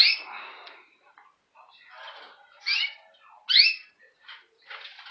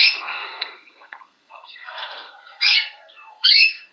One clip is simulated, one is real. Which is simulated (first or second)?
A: second